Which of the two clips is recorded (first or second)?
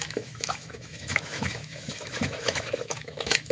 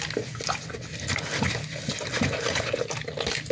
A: second